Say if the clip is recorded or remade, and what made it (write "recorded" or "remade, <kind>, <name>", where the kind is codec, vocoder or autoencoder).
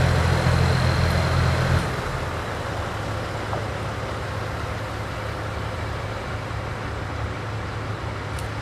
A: recorded